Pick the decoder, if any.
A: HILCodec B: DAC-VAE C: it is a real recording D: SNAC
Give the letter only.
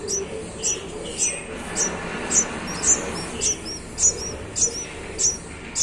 C